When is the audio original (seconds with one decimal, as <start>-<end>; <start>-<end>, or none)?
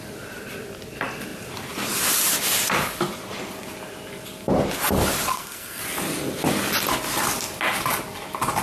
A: 0.0-5.3; 5.8-8.6